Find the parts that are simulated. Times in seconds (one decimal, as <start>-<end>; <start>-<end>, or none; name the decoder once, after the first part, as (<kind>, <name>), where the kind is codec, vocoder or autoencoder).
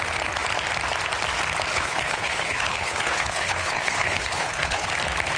1.7-4.9 (codec, HILCodec)